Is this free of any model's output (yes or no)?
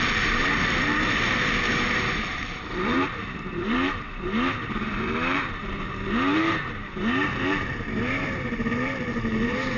no